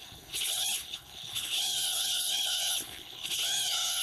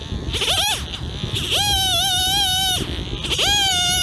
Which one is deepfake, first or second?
first